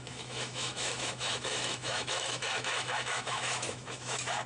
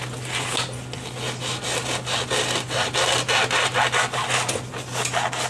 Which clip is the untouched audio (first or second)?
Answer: second